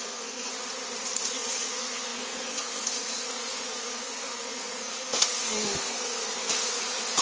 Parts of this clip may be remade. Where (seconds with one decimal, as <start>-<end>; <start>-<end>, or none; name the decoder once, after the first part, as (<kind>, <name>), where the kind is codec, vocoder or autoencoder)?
0.0-0.5 (codec, SNAC); 1.3-7.2